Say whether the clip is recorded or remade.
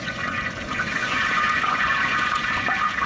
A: remade